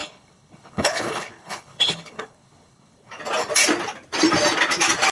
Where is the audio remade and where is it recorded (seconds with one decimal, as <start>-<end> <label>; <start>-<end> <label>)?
0.0-3.1 remade; 3.1-5.1 recorded